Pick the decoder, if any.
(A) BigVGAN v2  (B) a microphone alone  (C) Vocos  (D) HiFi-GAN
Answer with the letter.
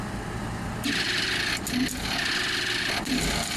B